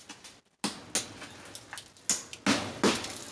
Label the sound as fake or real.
real